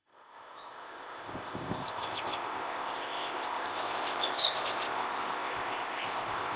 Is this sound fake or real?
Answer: fake